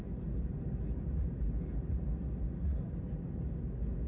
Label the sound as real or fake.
real